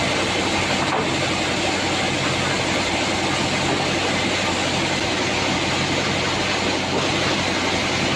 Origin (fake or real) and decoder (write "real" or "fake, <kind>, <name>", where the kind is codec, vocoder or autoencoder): real